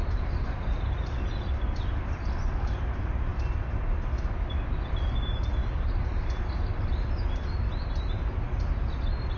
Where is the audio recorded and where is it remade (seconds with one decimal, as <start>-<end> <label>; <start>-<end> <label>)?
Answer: 0.0-2.9 remade; 2.9-5.6 recorded; 5.6-8.6 remade; 8.6-9.4 recorded